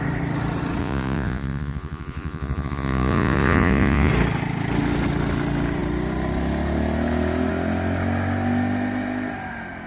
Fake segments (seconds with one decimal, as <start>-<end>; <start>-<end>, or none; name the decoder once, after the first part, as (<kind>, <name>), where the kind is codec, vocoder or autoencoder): 0.8-4.1 (vocoder, Vocos)